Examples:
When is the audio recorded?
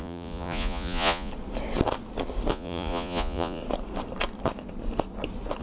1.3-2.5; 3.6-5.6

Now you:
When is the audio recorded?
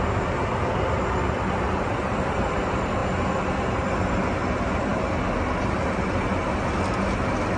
0.0-7.6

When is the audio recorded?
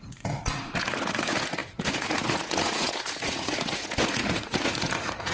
none